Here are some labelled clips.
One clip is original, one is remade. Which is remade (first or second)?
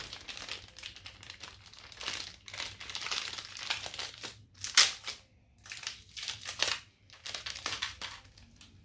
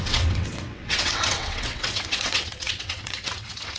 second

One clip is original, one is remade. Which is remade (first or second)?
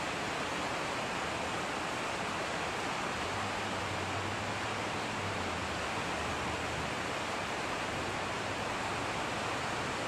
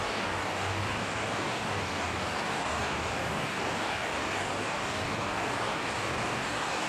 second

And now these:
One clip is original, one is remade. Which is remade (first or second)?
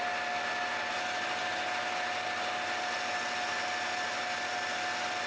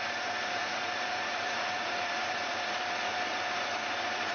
second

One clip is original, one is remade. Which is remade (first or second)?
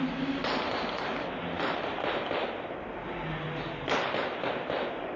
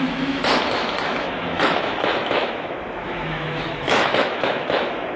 second